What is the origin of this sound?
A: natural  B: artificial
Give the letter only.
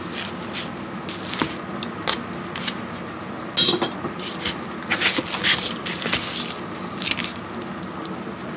A